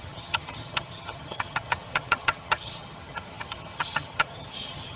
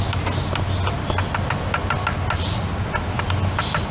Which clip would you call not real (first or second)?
first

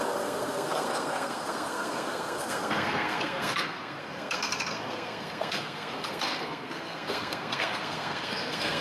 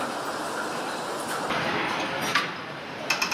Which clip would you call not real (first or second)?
first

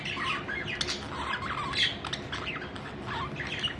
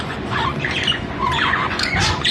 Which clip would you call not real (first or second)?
second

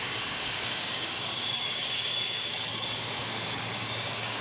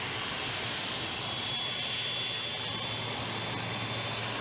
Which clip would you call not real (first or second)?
first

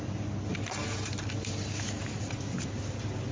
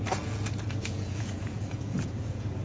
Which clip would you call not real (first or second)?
second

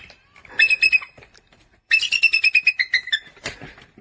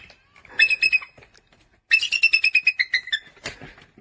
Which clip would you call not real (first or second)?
first